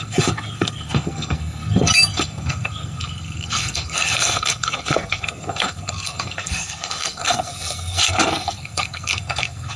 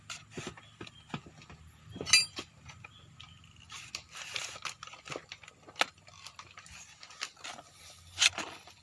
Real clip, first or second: second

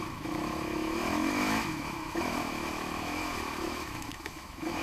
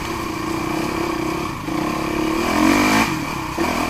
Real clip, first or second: second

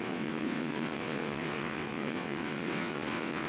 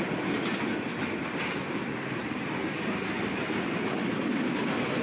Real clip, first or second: second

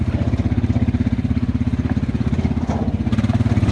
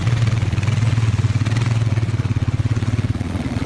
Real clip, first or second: first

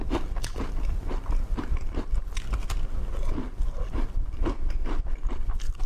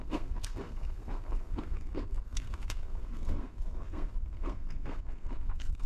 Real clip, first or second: first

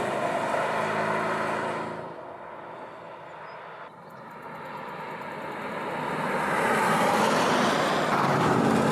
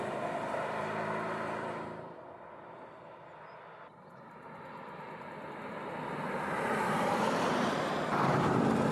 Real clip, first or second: first